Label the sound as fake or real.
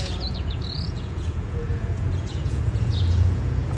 fake